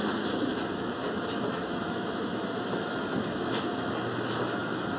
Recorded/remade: remade